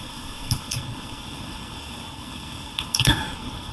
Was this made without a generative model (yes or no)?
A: no